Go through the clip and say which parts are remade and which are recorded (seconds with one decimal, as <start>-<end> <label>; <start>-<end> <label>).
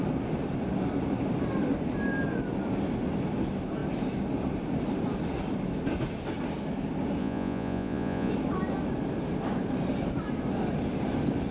0.0-7.2 recorded; 7.2-8.3 remade; 8.3-11.5 recorded